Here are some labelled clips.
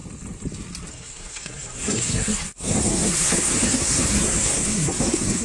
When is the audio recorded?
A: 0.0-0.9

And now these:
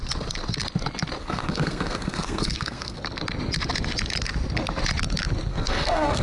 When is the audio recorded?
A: 0.0-1.2; 3.0-5.5